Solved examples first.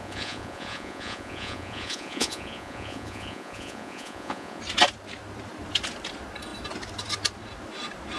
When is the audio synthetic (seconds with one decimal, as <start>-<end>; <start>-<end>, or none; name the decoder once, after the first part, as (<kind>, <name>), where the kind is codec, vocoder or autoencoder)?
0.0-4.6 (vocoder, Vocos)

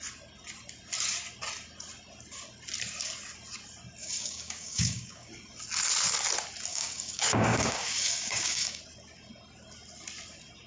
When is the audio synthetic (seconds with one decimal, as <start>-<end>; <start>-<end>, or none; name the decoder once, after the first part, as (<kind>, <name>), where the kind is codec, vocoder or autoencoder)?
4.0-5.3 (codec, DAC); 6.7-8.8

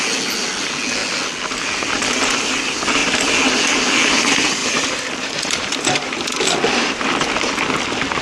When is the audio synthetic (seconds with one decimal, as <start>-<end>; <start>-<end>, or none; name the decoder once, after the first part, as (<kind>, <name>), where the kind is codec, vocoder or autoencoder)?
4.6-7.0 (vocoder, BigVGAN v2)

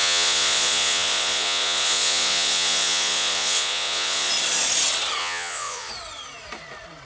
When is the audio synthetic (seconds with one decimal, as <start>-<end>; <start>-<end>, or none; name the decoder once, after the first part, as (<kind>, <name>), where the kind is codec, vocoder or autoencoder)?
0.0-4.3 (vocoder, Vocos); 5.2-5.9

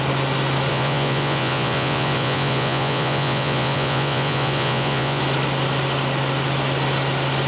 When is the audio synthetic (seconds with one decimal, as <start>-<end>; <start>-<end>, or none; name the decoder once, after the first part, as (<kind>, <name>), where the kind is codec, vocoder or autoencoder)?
0.7-5.2 (vocoder, Vocos)